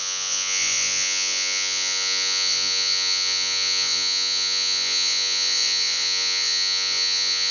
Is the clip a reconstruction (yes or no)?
yes